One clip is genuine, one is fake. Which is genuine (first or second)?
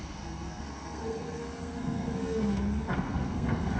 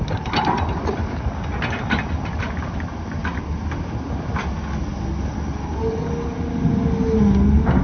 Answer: second